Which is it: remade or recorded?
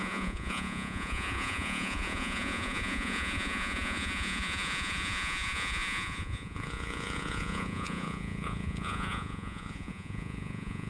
remade